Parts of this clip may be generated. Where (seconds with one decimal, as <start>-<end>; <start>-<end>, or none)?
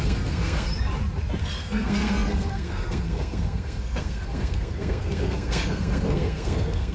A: 0.0-0.7; 1.4-6.9